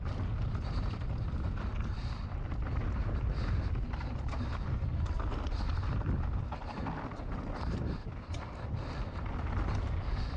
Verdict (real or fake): fake